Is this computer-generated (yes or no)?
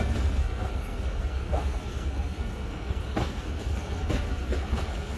yes